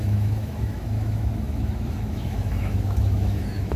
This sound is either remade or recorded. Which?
remade